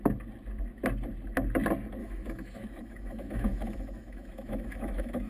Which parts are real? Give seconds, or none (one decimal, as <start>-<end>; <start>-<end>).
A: 0.0-2.0